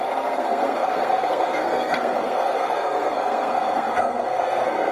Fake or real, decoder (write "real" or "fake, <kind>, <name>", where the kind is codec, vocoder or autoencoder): fake, codec, SNAC